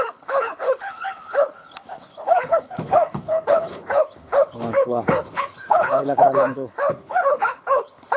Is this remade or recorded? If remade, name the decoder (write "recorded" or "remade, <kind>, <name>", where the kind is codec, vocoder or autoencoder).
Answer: remade, codec, HILCodec